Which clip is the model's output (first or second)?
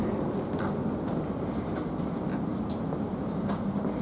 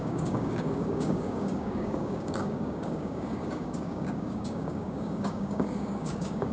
second